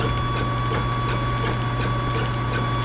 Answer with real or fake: real